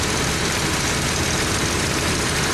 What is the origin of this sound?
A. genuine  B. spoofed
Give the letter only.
A